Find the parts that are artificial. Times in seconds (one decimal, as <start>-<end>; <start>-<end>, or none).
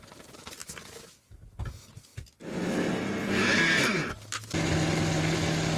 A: none